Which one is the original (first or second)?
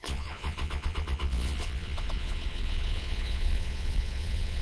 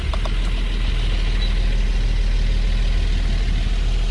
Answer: second